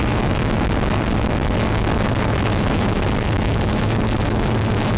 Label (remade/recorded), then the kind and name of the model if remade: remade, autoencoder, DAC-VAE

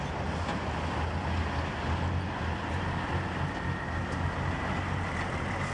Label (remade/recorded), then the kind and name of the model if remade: recorded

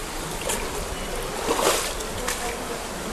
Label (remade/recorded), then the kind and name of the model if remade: recorded